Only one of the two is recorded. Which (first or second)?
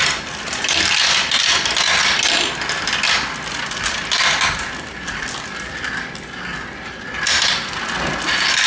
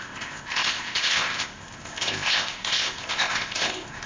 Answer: first